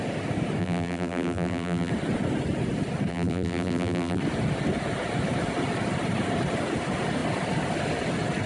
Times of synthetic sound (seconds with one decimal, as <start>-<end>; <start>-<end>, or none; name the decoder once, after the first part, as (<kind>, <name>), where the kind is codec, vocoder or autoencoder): 0.6-1.9 (vocoder, BigVGAN v2); 3.1-4.2

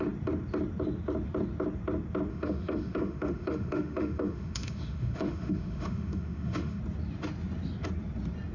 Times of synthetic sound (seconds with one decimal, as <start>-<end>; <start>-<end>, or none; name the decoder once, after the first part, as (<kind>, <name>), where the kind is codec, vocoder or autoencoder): 2.3-6.8 (autoencoder, DAC-VAE)

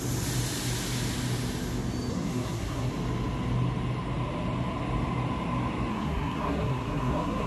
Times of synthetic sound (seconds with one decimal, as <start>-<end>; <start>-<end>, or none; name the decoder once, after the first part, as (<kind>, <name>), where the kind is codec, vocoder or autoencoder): 2.1-2.9 (codec, SNAC); 5.9-7.5

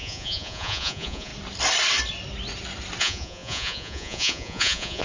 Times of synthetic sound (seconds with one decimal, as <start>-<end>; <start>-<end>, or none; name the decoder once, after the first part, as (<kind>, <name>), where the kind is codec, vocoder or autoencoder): 0.0-1.3 (vocoder, Vocos); 3.0-5.0

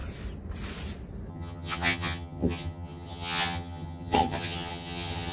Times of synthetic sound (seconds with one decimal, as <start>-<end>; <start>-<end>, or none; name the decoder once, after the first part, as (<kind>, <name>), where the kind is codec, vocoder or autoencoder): 1.3-5.3 (vocoder, HiFi-GAN)

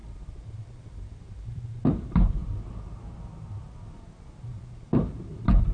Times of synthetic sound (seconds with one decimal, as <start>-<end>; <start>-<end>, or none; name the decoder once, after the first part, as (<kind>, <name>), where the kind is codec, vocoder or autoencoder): 0.0-1.9 (vocoder, BigVGAN v2); 4.5-5.1

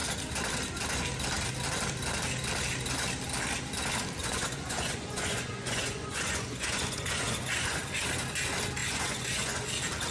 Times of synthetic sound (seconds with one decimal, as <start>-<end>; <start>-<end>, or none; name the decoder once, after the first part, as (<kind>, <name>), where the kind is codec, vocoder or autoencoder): 4.2-7.8 (vocoder, Vocos); 8.8-9.7